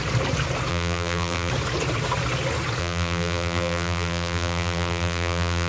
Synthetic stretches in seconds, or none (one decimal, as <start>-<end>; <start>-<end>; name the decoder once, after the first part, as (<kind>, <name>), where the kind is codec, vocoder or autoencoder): 0.7-1.5 (vocoder, BigVGAN v2); 2.8-5.7